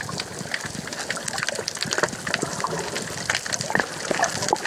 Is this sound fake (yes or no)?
no